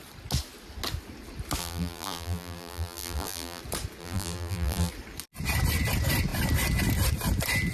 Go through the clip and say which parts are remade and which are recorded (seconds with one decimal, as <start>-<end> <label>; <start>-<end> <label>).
0.0-1.6 recorded; 1.6-3.6 remade; 3.6-4.0 recorded; 4.0-4.9 remade; 4.9-7.7 recorded